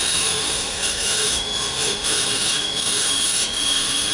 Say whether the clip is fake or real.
fake